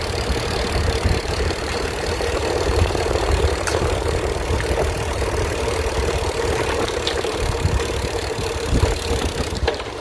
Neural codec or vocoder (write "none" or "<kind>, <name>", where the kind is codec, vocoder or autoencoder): vocoder, BigVGAN v2